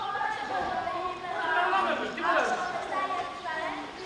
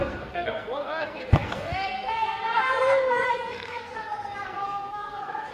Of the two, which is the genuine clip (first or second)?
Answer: first